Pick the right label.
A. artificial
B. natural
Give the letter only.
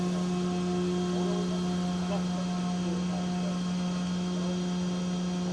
B